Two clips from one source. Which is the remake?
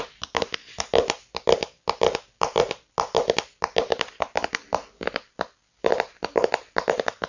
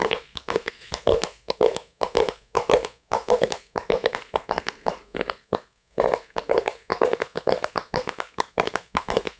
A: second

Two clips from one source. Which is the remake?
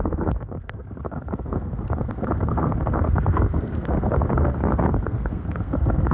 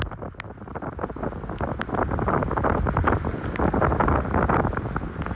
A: first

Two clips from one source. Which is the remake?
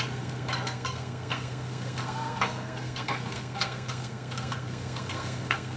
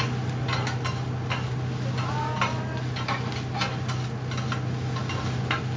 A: first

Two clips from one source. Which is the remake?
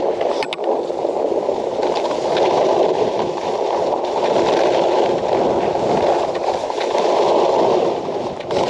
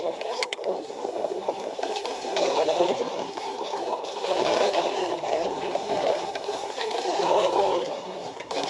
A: second